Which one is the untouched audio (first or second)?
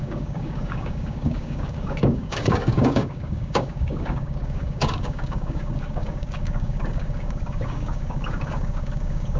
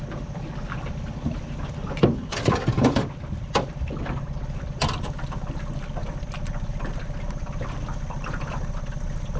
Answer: second